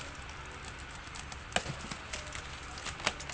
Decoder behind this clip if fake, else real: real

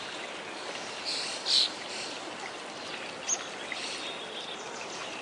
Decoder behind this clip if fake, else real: real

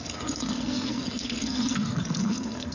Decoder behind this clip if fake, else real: fake, codec, SNAC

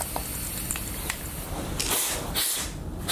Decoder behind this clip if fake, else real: real